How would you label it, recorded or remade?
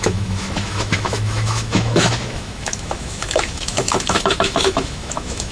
remade